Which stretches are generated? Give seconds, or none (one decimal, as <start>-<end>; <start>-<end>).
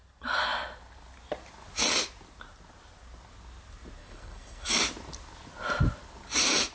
4.0-4.8